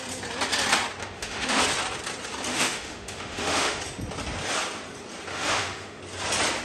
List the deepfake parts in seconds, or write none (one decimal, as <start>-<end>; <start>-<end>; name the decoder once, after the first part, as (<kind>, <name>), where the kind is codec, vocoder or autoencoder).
1.0-1.6 (autoencoder, DAC-VAE); 2.5-3.8; 5.3-6.0